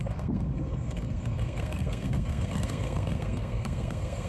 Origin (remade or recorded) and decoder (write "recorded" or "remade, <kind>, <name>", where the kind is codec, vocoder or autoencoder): remade, codec, SNAC